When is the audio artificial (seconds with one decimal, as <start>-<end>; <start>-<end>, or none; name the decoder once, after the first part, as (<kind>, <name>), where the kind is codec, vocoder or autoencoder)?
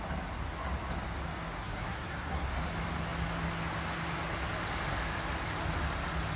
1.6-2.5 (codec, SNAC)